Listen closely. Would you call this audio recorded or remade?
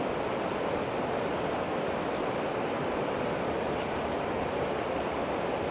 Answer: recorded